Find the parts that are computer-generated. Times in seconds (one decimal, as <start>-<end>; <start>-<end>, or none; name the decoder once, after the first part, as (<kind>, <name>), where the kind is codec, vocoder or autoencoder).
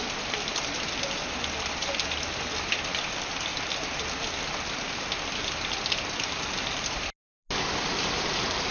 none